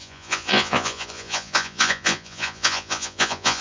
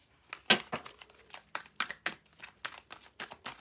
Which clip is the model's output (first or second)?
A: first